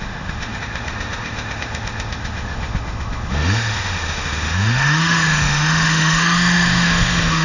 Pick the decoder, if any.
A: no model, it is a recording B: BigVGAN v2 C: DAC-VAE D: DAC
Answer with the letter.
C